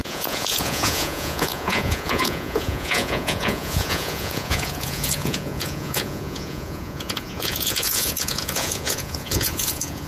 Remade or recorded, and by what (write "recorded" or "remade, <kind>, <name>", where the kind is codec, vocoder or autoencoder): remade, vocoder, Vocos